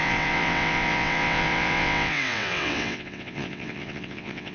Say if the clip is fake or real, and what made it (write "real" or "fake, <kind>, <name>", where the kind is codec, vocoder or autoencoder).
fake, vocoder, WaveNeXt